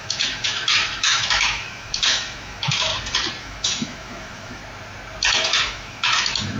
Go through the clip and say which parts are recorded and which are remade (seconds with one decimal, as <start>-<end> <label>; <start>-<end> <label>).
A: 0.0-2.9 remade; 2.9-3.4 recorded; 3.4-4.6 remade; 4.6-5.3 recorded; 5.3-6.6 remade